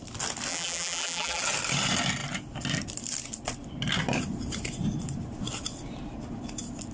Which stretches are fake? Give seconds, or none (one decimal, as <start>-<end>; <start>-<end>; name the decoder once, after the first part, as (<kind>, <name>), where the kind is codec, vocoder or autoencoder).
0.5-1.4 (vocoder, BigVGAN v2)